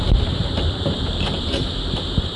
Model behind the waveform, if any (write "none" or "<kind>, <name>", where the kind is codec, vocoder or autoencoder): vocoder, BigVGAN v2